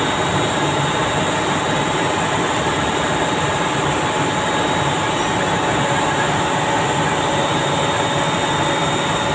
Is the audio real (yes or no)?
yes